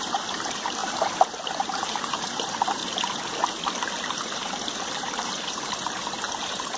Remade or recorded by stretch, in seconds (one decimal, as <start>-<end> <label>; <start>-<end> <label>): 0.0-2.8 remade; 2.8-4.1 recorded; 4.1-6.8 remade